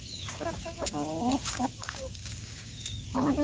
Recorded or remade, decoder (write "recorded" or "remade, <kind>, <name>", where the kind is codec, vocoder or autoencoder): remade, codec, DAC